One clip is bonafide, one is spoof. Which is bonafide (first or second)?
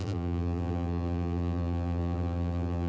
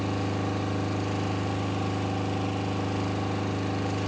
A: second